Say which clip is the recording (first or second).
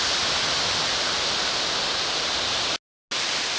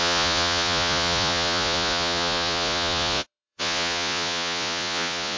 first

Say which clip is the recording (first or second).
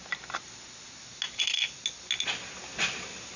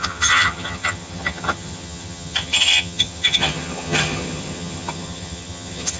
first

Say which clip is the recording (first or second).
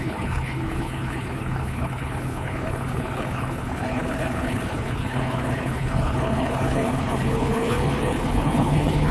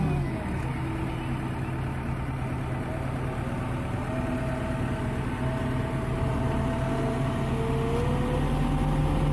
second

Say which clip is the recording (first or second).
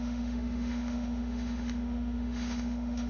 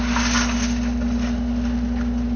second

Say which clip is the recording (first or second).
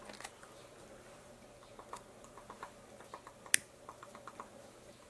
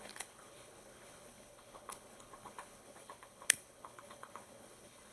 first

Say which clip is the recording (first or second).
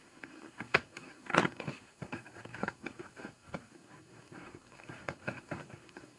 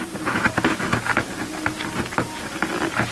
second